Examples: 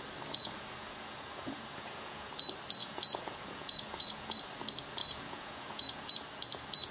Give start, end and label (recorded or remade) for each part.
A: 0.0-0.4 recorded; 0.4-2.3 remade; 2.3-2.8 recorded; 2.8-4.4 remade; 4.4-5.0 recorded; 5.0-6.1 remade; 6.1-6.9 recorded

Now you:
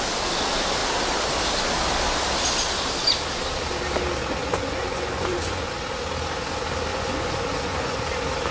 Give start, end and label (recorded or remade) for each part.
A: 0.0-4.4 recorded; 4.4-5.7 remade; 5.7-6.9 recorded; 6.9-8.0 remade; 8.0-8.5 recorded